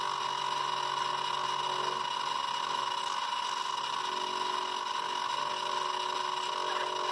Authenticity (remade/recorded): recorded